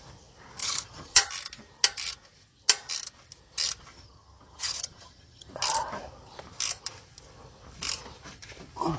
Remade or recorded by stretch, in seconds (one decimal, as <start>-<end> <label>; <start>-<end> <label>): 0.0-0.6 recorded; 0.6-1.3 remade; 1.3-3.9 recorded; 3.9-5.5 remade; 5.5-9.0 recorded